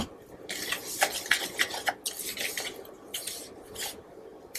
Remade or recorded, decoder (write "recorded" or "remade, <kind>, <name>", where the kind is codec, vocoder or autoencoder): recorded